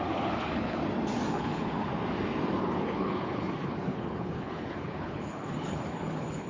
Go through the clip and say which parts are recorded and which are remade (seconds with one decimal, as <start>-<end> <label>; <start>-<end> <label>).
0.0-0.8 remade; 0.8-1.3 recorded; 1.3-1.9 remade; 1.9-2.6 recorded; 2.6-6.5 remade